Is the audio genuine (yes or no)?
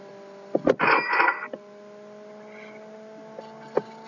yes